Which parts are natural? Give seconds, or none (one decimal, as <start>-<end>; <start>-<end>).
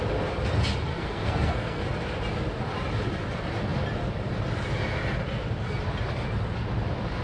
0.0-0.9; 1.8-7.2